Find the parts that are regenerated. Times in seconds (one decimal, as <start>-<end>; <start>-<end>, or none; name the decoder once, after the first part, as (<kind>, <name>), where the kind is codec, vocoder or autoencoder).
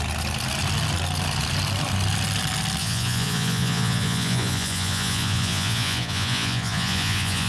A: 2.8-7.5 (vocoder, Vocos)